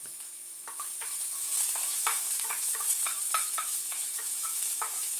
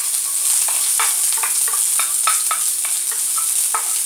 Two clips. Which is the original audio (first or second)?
second